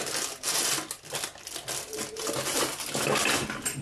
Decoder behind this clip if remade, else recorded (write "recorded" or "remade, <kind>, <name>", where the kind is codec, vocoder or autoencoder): recorded